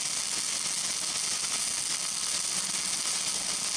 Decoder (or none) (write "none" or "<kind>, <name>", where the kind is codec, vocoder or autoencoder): none